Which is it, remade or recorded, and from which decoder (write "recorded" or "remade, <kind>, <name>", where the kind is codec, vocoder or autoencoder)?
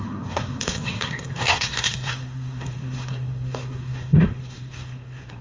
remade, codec, SNAC